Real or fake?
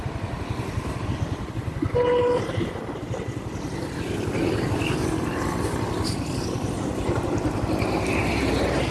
real